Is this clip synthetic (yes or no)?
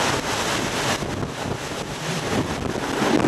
no